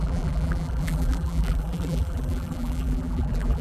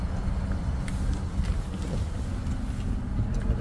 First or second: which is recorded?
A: second